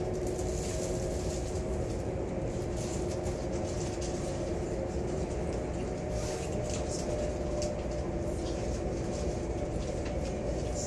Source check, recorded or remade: recorded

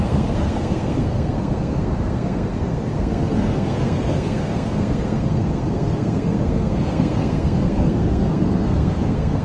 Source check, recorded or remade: remade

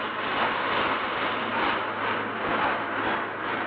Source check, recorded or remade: recorded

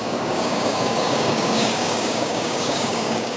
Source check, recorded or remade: remade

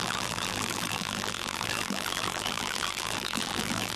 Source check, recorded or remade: remade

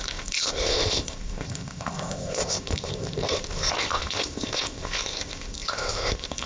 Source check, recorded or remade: remade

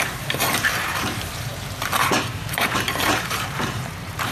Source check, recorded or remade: remade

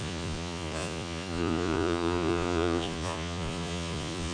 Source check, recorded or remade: remade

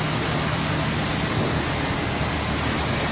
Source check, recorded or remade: recorded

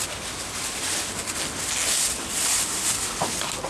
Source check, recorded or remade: recorded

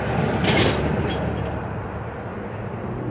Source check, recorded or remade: recorded